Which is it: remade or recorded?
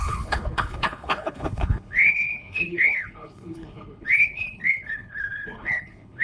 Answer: remade